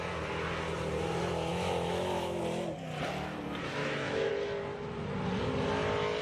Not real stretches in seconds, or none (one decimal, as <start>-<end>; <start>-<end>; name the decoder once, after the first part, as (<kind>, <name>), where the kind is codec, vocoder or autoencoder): 1.5-2.4 (autoencoder, DAC-VAE); 3.8-4.3